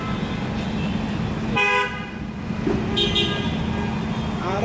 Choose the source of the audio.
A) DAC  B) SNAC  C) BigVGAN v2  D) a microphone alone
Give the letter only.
D